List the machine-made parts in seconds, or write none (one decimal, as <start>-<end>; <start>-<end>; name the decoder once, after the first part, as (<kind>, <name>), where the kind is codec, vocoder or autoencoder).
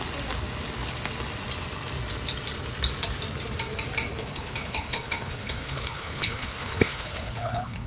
4.2-7.9 (codec, HILCodec)